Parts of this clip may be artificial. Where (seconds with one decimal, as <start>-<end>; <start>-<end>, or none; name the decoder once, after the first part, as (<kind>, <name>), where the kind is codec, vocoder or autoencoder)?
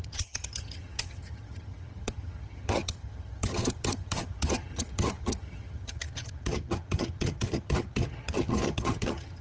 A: 0.0-9.4 (vocoder, HiFi-GAN)